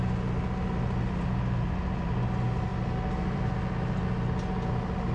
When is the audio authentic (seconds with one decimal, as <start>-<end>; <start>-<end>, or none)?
0.0-2.7; 3.5-5.1